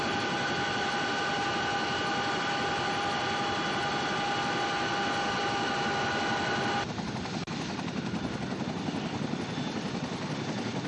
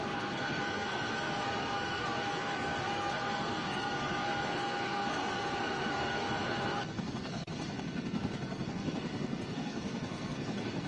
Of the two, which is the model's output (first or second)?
second